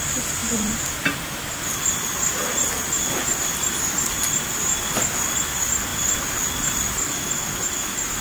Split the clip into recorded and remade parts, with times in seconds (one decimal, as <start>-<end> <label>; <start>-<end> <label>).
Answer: 0.0-8.2 remade